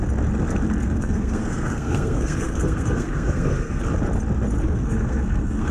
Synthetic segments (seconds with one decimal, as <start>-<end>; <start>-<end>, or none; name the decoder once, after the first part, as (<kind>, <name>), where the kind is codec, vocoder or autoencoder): 0.8-3.8 (codec, SNAC); 4.6-5.7